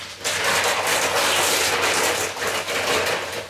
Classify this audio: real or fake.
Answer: real